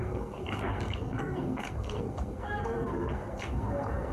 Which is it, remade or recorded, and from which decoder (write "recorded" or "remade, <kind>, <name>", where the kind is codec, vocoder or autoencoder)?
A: remade, codec, SNAC